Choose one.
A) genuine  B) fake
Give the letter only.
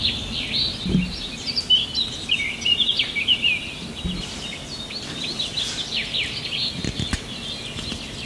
A